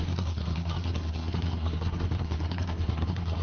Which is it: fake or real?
fake